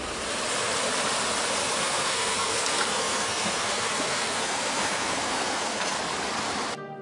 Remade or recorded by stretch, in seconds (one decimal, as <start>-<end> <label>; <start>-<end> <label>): 0.0-1.8 recorded; 1.8-6.0 remade; 6.0-7.0 recorded